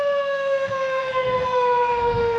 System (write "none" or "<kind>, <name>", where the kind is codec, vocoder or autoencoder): autoencoder, DAC-VAE